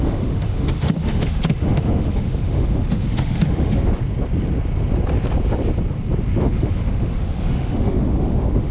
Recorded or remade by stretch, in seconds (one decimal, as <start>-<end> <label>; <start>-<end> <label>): 0.0-4.0 remade; 4.0-6.4 recorded; 6.4-8.7 remade